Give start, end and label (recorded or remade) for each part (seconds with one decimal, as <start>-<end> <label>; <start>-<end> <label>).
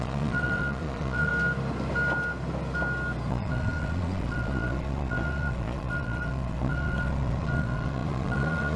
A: 0.0-1.3 remade; 1.3-3.3 recorded; 3.3-8.8 remade